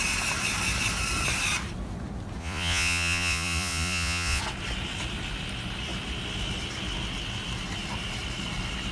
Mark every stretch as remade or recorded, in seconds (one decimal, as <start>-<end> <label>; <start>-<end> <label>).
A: 0.0-2.4 recorded; 2.4-4.4 remade; 4.4-8.9 recorded